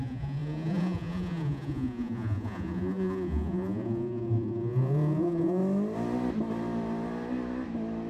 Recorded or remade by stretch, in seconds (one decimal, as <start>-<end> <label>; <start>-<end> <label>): 0.0-5.6 remade; 5.6-8.1 recorded